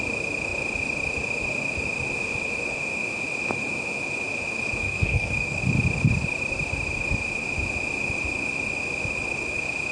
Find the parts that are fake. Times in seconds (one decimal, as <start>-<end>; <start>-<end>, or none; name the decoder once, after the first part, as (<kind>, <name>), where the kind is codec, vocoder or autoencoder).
4.8-5.6 (codec, DAC)